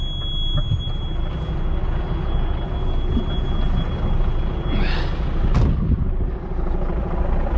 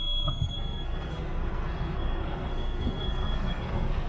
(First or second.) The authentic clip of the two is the first